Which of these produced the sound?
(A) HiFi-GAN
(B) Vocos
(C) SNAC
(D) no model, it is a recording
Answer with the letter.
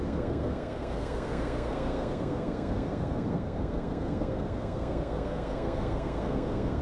C